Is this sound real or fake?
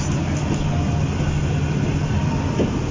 real